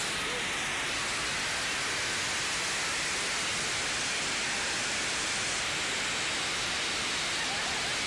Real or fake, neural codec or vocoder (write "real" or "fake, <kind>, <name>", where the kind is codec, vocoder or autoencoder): real